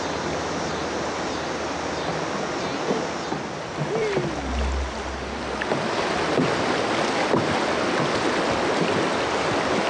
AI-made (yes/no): no